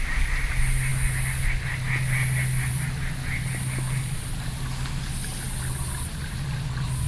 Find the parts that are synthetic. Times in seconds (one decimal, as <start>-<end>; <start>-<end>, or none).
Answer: none